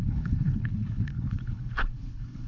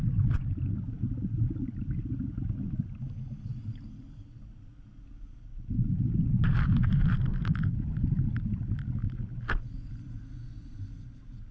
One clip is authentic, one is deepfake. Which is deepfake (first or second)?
first